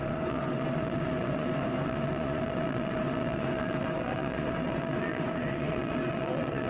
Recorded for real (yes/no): no